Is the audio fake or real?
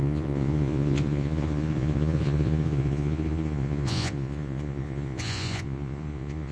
fake